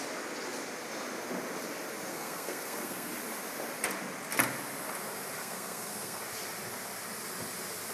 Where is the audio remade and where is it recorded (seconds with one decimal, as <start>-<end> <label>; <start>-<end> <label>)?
0.0-2.1 recorded; 2.1-3.1 remade; 3.1-5.4 recorded; 5.4-6.2 remade; 6.2-7.9 recorded